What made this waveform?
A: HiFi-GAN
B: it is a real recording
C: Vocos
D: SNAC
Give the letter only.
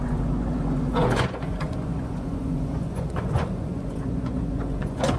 C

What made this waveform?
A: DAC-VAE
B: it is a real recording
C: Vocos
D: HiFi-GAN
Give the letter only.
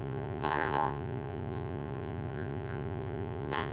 C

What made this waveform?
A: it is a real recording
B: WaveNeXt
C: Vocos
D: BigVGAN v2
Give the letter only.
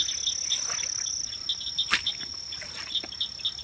A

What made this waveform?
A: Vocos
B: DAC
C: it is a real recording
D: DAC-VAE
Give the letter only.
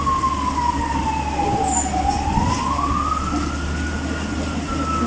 C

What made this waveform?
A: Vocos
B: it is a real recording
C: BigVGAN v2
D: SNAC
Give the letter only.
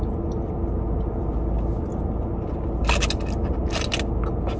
B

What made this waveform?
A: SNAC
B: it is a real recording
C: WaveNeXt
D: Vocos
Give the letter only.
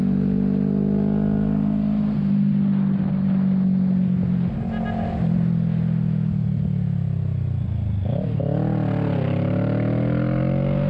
B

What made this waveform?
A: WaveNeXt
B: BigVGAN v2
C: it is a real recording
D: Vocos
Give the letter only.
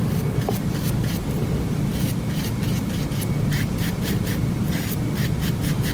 C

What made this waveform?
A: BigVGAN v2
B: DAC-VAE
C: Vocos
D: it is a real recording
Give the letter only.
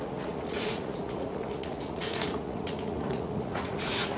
C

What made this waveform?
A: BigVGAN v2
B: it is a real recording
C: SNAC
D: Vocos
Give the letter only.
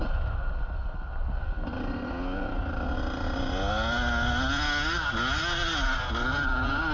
B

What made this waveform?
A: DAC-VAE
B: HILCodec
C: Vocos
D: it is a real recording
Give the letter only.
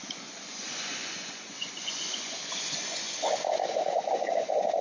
C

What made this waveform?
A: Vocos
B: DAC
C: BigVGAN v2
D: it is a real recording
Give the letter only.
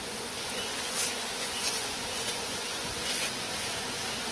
A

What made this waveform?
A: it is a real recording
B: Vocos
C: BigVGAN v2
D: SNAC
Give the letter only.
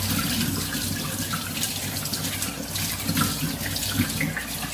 A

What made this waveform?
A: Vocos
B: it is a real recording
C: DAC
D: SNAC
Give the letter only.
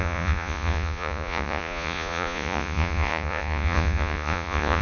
A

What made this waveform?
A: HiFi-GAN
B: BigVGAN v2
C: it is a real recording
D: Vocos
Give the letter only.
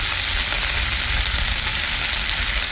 C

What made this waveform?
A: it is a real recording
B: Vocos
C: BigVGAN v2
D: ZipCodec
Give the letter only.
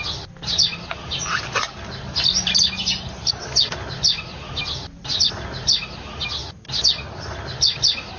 A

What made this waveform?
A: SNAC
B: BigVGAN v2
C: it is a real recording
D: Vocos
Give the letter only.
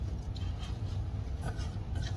D